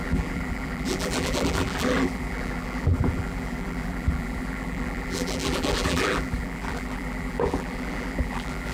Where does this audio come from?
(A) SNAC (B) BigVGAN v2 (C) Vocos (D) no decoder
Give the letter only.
B